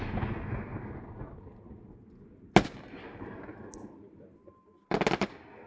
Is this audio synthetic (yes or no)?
no